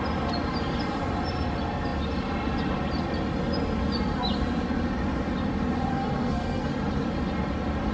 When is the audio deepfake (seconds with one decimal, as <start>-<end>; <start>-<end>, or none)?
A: 5.9-6.7